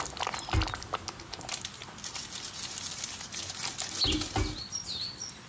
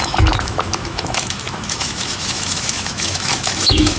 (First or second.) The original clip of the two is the first